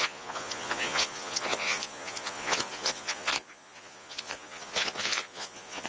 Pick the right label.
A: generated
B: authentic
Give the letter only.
A